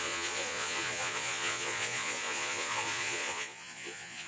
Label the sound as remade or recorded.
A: remade